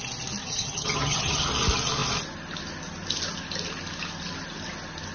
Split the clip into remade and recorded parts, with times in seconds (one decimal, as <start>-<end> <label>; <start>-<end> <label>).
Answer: 0.0-0.4 recorded; 0.4-1.5 remade; 1.5-5.1 recorded